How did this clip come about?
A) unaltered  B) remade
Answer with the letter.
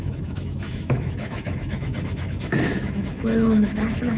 B